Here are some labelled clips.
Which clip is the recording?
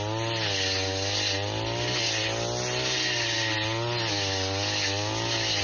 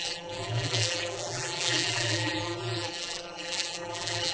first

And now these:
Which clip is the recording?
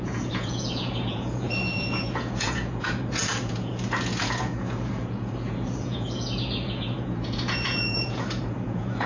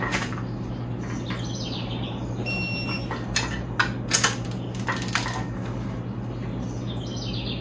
second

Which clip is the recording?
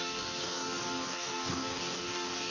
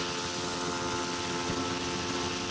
second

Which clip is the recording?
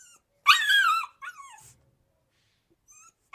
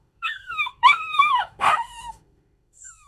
first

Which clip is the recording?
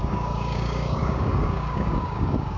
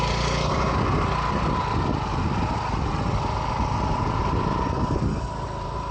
second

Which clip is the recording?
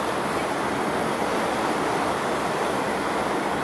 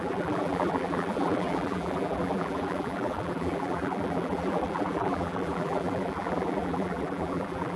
first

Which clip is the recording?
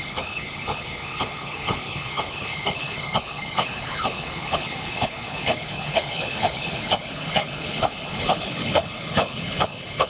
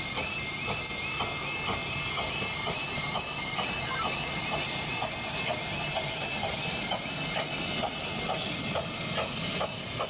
second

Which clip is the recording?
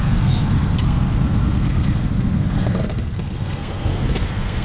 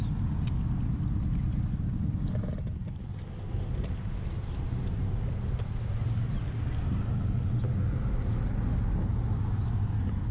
second